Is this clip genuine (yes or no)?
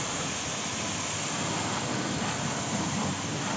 yes